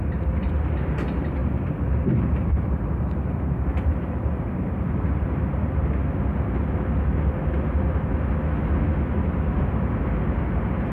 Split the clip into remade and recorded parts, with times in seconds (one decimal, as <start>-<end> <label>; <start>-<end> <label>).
0.0-5.8 remade; 5.8-9.6 recorded; 9.6-10.9 remade